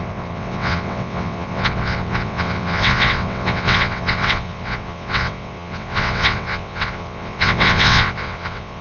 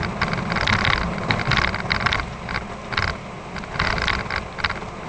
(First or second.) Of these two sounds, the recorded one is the second